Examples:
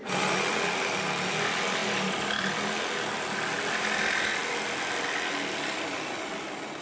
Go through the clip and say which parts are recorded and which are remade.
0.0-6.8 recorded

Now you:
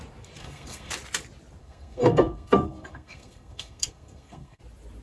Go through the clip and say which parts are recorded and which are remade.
0.0-0.4 recorded; 0.4-0.9 remade; 0.9-1.6 recorded; 1.6-4.6 remade; 4.6-5.0 recorded

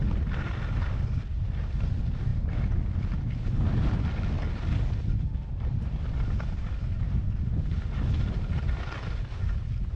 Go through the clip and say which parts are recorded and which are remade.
0.0-10.0 recorded

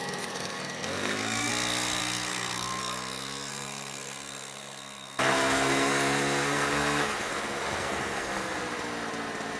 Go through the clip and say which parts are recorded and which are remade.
0.0-1.5 remade; 1.5-2.0 recorded; 2.0-2.8 remade; 2.8-3.5 recorded; 3.5-8.6 remade; 8.6-9.6 recorded